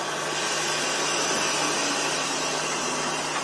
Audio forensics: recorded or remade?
recorded